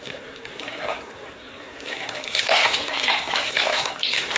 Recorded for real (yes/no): no